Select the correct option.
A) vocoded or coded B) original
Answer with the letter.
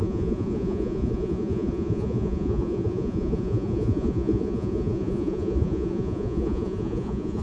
A